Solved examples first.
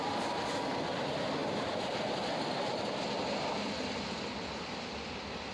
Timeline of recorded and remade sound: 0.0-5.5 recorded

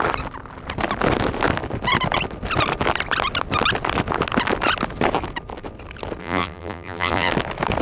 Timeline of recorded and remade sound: 0.0-6.2 recorded; 6.2-7.3 remade; 7.3-7.8 recorded

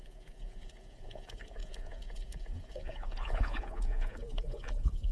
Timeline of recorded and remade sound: 0.0-5.1 remade

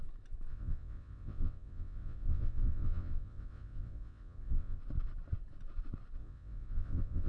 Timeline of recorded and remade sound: 0.0-0.5 recorded; 0.5-4.8 remade; 4.8-6.2 recorded; 6.2-7.3 remade

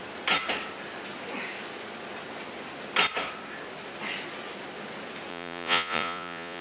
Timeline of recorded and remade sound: 0.0-5.3 recorded; 5.3-6.6 remade